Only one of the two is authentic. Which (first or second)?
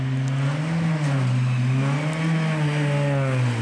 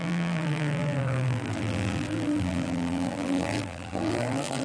first